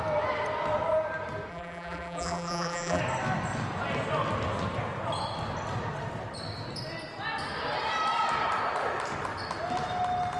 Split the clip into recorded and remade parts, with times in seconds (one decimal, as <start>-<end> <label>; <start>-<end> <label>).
0.0-1.5 recorded; 1.5-3.0 remade; 3.0-10.4 recorded